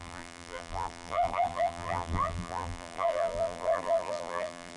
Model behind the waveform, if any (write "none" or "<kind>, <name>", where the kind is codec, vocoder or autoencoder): vocoder, BigVGAN v2